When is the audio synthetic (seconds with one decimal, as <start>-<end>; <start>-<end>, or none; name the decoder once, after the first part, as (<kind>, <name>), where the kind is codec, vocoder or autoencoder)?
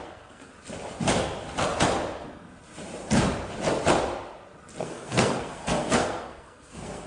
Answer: 0.0-0.5 (codec, SNAC); 4.8-7.1